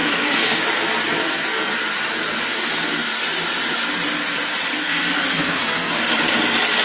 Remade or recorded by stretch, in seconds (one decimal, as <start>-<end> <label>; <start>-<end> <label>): 0.0-0.6 remade; 0.6-1.2 recorded; 1.2-1.7 remade; 1.7-4.8 recorded; 4.8-5.9 remade; 5.9-6.8 recorded